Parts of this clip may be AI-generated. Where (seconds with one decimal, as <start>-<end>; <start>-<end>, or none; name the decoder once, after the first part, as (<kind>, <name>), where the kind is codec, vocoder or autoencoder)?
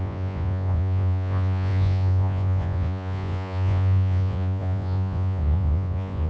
0.0-6.3 (vocoder, Vocos)